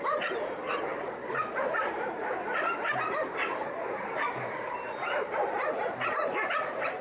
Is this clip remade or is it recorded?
remade